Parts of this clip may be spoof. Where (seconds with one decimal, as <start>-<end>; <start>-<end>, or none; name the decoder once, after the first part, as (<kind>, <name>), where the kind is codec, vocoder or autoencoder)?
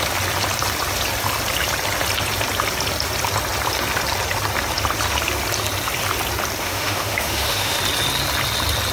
6.6-7.8 (autoencoder, DAC-VAE)